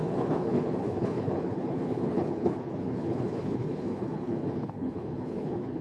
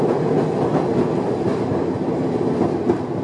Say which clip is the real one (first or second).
second